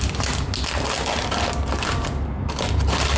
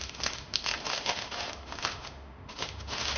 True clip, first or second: first